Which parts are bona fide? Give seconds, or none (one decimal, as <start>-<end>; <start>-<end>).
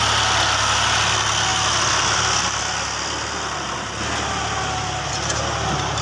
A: 0.0-6.0